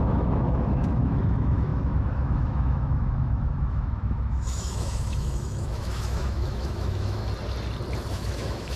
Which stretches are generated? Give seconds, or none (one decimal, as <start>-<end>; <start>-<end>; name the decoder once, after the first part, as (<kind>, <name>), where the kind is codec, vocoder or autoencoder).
0.0-7.2 (autoencoder, DAC-VAE); 8.1-8.8